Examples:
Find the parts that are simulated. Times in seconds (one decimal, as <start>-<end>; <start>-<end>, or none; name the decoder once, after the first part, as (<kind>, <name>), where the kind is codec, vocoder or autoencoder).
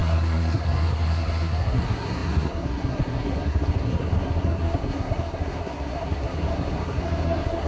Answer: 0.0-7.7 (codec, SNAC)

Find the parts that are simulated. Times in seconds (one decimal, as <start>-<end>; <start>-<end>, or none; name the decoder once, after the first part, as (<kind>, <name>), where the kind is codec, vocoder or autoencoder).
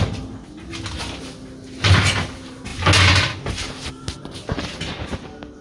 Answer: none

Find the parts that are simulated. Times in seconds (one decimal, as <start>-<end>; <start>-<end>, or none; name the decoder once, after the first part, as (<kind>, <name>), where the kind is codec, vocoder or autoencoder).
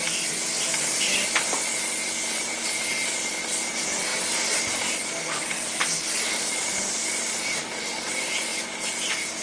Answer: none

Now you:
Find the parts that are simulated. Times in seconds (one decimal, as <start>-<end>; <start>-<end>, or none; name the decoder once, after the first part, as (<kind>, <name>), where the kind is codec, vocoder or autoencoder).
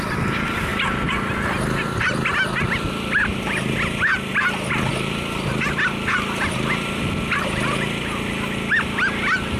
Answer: none